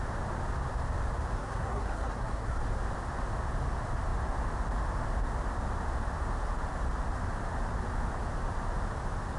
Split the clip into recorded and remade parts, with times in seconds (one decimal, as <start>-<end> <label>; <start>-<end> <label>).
0.0-1.4 recorded; 1.4-2.6 remade; 2.6-9.4 recorded